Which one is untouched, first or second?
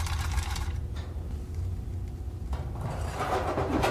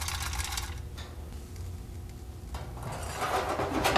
second